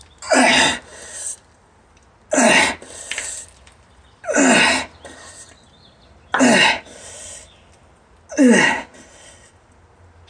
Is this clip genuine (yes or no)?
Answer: yes